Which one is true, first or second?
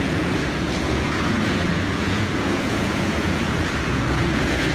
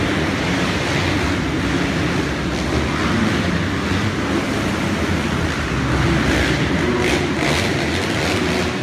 second